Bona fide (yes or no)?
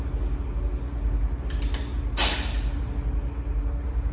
yes